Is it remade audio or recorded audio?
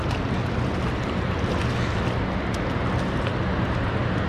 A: recorded